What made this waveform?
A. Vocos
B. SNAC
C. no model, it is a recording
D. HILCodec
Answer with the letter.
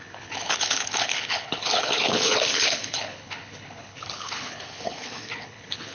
D